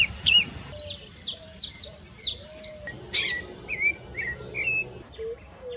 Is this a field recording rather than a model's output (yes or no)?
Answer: yes